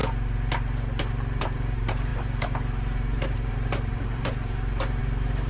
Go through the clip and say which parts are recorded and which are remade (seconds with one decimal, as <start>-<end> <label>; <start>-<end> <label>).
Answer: 0.0-1.4 recorded; 1.4-5.5 remade